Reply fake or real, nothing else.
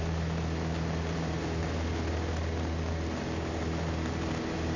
real